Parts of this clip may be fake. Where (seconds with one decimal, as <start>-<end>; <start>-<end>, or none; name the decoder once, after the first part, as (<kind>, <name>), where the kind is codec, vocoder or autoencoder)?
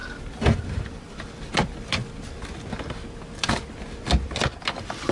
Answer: 0.8-2.0 (vocoder, BigVGAN v2); 4.6-5.1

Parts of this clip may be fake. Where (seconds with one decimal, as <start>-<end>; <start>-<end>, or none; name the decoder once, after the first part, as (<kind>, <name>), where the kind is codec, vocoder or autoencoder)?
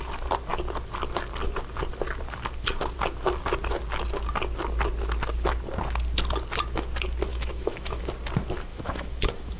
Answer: 7.3-8.0 (autoencoder, DAC-VAE); 8.7-9.6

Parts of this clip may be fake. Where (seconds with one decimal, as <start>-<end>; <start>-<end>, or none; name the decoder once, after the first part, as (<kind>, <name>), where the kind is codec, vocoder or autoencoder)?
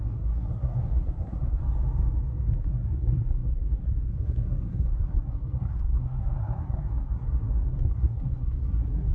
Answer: 0.0-1.6 (codec, SNAC); 2.6-9.1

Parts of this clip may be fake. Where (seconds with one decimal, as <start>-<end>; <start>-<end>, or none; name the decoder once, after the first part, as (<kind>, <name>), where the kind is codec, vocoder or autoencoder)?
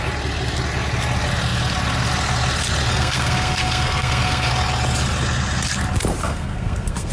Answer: 2.9-4.5 (codec, SNAC); 6.2-7.1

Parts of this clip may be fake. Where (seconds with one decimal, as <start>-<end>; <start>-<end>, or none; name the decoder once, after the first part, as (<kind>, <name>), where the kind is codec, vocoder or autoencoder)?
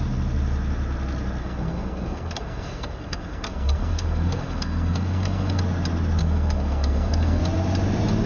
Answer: 1.4-5.6 (codec, SNAC); 6.2-7.4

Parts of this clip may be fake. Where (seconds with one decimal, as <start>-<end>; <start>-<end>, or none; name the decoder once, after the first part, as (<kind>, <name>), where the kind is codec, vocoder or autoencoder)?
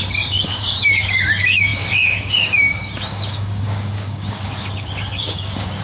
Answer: 0.0-5.8 (codec, DAC)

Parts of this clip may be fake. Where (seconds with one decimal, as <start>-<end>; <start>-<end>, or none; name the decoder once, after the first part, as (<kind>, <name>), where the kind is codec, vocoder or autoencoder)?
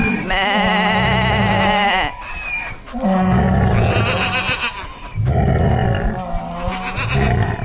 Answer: none